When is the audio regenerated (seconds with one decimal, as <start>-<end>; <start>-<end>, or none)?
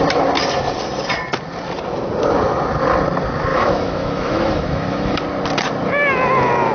3.5-5.2